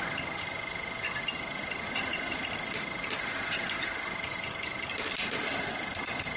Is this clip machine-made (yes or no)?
no